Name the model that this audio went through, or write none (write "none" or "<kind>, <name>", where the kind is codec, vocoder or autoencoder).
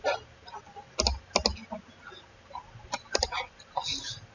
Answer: none